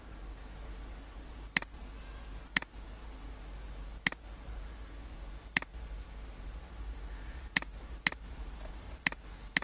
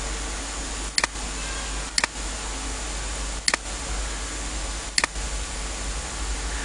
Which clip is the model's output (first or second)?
first